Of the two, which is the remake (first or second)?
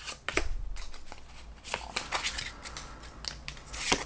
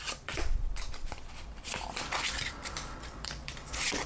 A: second